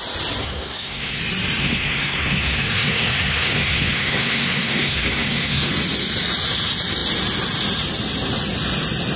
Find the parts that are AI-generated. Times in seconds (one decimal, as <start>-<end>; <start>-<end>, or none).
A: 0.4-1.2; 1.6-5.7